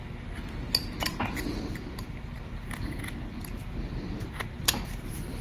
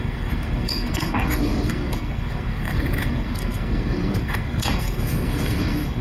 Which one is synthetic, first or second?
second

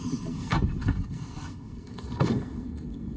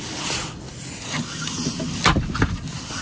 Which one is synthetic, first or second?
first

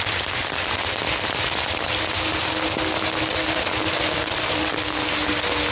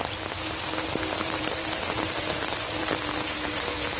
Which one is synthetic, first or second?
second